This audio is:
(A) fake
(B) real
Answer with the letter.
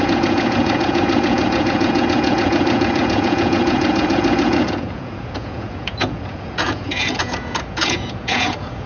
A